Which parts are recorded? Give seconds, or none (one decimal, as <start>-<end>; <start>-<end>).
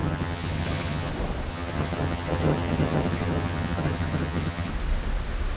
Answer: 1.1-1.5; 4.7-5.6